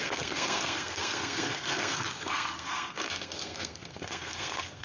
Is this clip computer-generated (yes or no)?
yes